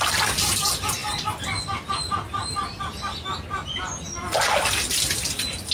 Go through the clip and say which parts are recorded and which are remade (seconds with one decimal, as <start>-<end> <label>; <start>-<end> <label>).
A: 0.0-5.7 recorded